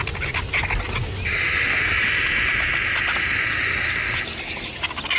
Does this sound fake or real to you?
real